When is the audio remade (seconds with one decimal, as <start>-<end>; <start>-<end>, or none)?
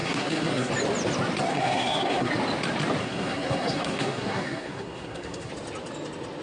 0.0-0.7; 1.5-2.3; 3.0-5.5